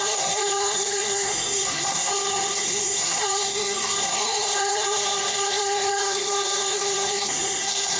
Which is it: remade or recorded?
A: remade